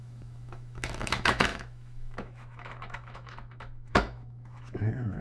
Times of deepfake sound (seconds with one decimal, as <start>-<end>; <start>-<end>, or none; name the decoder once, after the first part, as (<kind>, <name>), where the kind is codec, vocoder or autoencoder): 0.0-5.2 (autoencoder, DAC-VAE)